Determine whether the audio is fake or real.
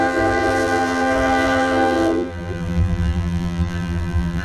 fake